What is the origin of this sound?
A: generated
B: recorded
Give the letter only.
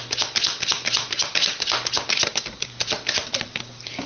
B